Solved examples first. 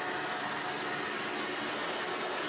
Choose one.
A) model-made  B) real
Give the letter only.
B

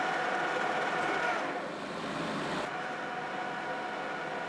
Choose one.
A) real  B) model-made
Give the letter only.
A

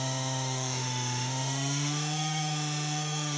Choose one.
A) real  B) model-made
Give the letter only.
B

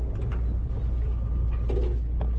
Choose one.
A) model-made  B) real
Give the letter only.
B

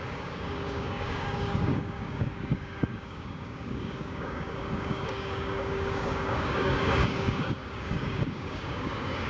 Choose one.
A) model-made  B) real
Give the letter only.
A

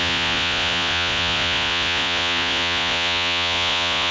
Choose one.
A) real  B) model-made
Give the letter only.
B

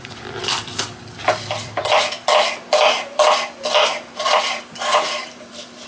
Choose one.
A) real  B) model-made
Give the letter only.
B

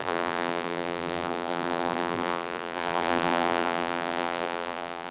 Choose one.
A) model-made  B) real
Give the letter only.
A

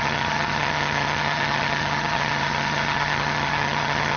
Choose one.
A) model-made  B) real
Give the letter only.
A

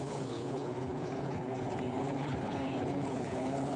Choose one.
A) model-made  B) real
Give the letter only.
A